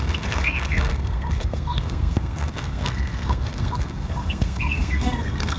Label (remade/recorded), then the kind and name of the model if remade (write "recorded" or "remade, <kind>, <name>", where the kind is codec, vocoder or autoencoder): remade, codec, SNAC